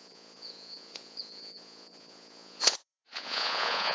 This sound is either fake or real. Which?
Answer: fake